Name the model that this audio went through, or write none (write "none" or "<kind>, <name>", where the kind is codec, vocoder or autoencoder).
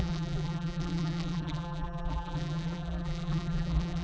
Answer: vocoder, BigVGAN v2